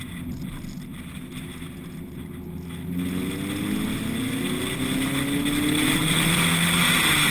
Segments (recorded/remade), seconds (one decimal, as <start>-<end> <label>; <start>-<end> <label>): 0.0-6.0 recorded; 6.0-6.6 remade; 6.6-7.3 recorded